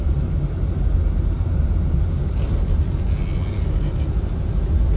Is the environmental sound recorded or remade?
recorded